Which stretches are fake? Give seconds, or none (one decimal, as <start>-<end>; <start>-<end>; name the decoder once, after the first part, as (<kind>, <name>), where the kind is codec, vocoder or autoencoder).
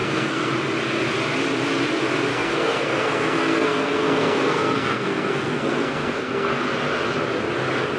0.0-0.5 (codec, SNAC); 2.3-6.6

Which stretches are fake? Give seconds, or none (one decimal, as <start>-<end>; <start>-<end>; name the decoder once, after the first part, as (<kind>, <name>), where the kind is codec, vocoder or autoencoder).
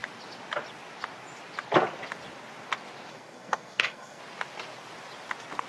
3.1-4.2 (codec, SNAC)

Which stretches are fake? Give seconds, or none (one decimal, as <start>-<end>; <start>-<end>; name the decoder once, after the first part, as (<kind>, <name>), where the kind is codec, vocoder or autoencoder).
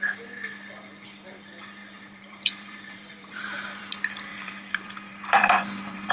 1.8-3.8 (vocoder, BigVGAN v2); 4.3-6.1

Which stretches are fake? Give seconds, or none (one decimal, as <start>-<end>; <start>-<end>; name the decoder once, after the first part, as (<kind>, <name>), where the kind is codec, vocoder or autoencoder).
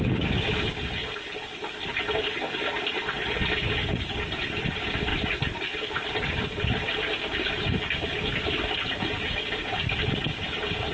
none